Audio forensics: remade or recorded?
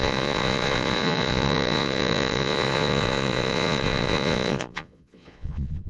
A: remade